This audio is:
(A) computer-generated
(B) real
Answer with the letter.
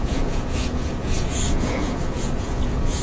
A